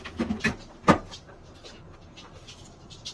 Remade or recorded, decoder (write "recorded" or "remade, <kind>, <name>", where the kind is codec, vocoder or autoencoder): recorded